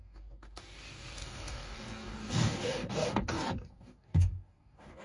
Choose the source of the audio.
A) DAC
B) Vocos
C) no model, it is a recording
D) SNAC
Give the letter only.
A